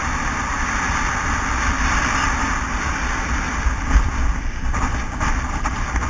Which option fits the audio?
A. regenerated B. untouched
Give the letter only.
B